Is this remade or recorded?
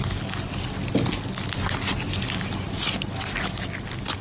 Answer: recorded